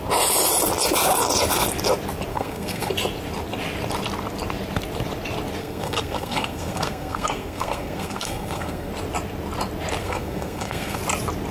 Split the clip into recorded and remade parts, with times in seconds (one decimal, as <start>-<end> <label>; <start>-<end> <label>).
0.0-2.3 recorded; 2.3-2.9 remade; 2.9-5.6 recorded; 5.6-8.9 remade; 8.9-10.0 recorded; 10.0-11.0 remade; 11.0-11.5 recorded